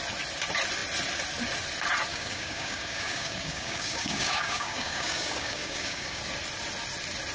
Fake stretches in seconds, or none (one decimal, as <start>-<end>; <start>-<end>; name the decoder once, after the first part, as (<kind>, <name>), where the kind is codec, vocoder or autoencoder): 2.1-6.2 (codec, DAC)